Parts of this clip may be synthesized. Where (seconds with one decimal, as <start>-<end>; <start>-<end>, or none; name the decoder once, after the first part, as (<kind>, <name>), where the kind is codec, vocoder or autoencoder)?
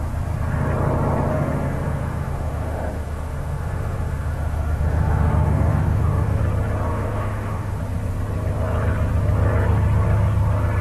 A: 1.3-6.4 (autoencoder, DAC-VAE); 6.9-7.8